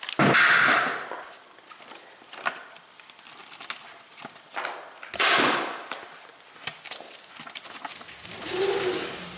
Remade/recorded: recorded